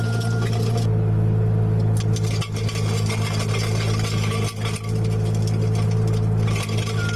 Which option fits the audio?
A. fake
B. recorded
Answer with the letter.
B